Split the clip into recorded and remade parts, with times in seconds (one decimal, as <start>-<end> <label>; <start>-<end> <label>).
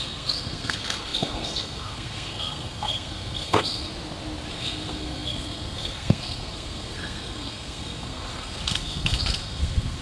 0.0-3.9 remade; 3.9-4.5 recorded; 4.5-10.0 remade